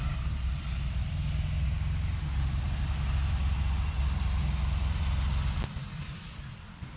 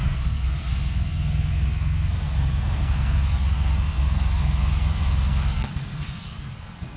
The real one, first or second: first